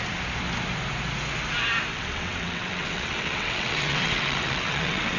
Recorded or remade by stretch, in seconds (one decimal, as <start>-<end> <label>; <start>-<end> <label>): 0.0-1.9 recorded; 1.9-5.2 remade